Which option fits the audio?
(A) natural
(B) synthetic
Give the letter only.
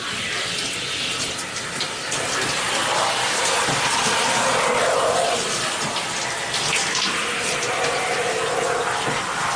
A